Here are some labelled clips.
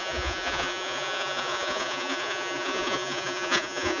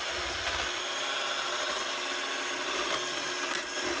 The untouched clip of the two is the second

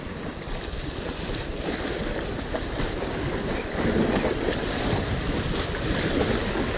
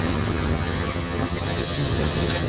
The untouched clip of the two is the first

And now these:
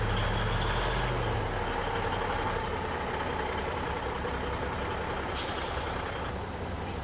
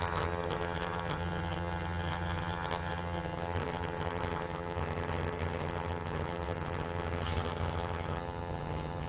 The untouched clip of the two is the first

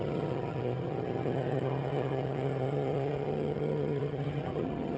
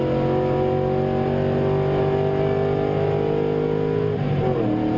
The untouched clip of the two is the second